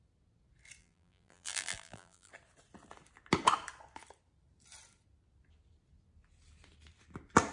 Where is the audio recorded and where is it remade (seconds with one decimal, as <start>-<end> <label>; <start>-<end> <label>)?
0.0-0.8 recorded; 0.8-2.3 remade; 2.3-7.5 recorded